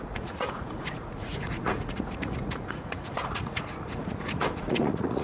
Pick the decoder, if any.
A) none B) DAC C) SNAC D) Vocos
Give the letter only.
D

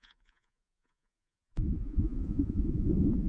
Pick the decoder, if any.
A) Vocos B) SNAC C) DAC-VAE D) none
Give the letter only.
A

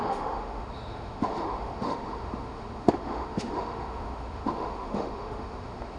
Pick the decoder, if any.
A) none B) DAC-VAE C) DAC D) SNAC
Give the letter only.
B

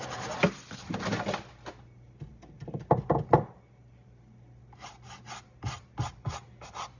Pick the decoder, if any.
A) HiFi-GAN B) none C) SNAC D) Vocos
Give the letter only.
B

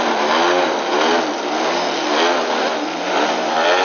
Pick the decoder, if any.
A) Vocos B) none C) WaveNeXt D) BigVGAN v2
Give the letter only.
B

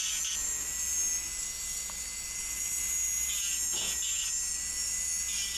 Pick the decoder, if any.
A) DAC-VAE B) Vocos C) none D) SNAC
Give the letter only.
C